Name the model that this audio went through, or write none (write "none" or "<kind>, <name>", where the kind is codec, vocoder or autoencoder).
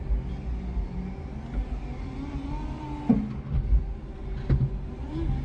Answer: none